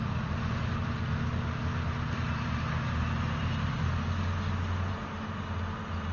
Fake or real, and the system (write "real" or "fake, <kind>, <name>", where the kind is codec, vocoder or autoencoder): real